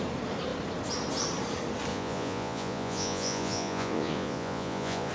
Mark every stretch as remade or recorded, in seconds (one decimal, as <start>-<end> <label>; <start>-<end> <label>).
0.0-1.9 recorded; 1.9-5.1 remade